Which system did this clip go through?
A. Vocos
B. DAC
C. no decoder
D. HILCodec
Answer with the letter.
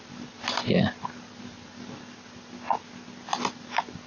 C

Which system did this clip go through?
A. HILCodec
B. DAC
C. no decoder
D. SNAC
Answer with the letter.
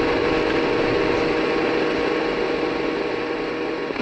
C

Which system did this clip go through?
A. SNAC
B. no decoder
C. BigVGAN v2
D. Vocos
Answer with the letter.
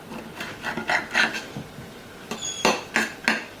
B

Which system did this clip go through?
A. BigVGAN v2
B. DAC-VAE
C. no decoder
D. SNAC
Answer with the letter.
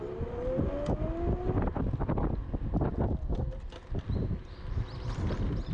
C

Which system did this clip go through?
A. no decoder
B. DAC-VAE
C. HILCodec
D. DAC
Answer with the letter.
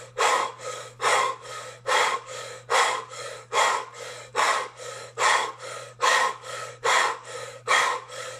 D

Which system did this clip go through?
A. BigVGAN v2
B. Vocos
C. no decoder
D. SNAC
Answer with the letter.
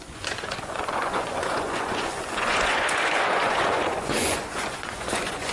B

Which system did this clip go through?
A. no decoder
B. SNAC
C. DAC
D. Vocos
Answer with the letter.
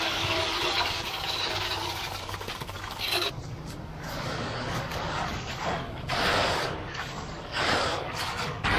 C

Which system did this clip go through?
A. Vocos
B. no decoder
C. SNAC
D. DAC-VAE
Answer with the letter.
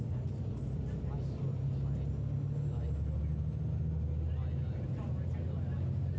B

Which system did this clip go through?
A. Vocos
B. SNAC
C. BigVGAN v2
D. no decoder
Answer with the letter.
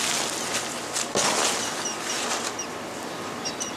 D